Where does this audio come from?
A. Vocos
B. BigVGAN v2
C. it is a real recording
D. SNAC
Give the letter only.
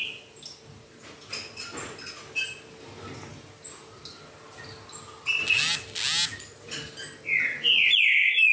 C